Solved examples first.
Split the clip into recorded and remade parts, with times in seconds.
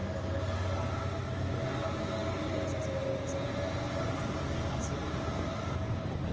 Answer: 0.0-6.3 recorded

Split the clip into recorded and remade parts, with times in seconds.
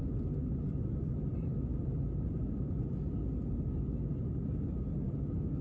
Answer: 0.0-5.6 recorded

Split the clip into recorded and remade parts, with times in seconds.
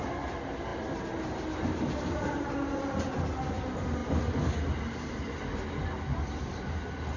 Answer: 0.0-7.2 recorded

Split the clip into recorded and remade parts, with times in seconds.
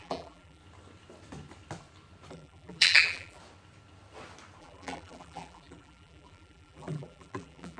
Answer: 0.0-0.6 remade; 0.6-2.3 recorded; 2.3-3.4 remade; 3.4-4.6 recorded; 4.6-7.8 remade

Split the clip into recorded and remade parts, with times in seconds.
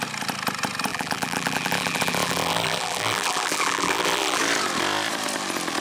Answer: 0.0-0.9 recorded; 0.9-4.4 remade; 4.4-5.8 recorded